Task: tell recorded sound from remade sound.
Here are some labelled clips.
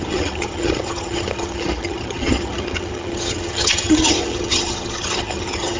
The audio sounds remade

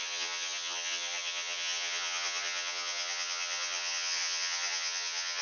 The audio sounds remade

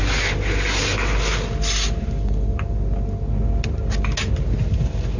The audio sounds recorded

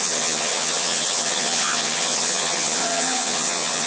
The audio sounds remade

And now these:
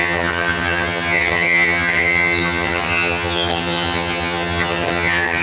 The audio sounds remade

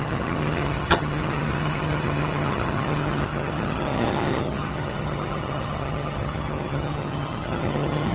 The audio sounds remade